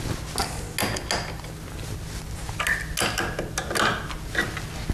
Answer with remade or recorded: recorded